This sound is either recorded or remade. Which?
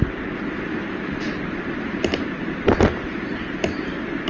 recorded